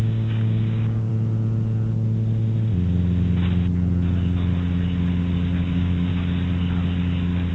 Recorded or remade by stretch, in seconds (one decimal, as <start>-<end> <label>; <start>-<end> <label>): 0.0-1.1 remade; 1.1-5.6 recorded; 5.6-6.1 remade; 6.1-7.5 recorded